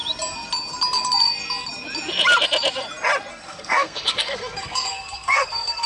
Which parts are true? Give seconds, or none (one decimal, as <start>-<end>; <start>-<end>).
0.0-3.3